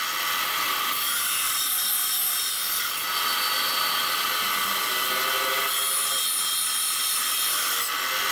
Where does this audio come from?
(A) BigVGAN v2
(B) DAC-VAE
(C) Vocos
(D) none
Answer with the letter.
D